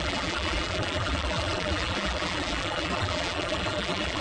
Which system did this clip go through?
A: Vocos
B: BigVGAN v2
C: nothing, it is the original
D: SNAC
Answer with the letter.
B